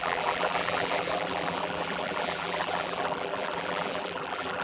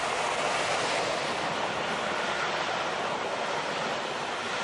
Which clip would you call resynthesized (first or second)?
first